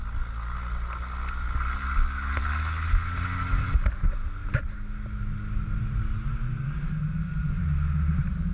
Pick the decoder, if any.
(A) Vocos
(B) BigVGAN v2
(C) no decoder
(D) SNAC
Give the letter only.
C